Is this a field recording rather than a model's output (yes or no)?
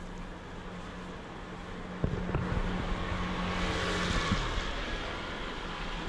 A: yes